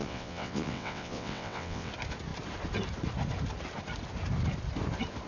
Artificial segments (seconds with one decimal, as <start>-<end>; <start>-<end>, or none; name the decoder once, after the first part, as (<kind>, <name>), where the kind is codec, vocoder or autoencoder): 0.0-1.9 (vocoder, WaveNeXt)

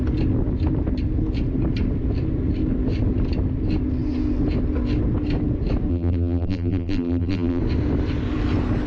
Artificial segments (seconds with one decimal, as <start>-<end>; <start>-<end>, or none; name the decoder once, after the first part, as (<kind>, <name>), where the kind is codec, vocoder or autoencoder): 5.9-7.6 (vocoder, BigVGAN v2)